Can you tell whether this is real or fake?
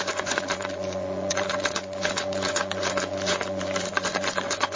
fake